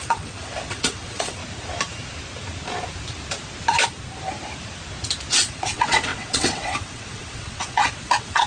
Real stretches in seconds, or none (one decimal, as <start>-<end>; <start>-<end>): 1.4-5.3